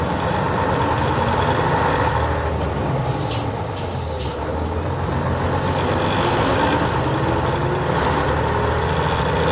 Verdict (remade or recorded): recorded